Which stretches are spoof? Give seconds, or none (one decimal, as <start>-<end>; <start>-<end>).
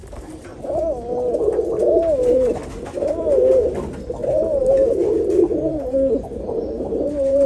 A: 0.0-0.5; 4.6-5.0; 5.7-7.5